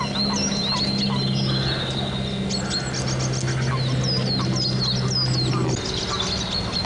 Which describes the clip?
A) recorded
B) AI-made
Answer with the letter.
A